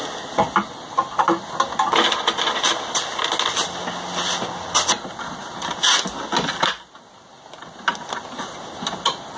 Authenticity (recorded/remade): recorded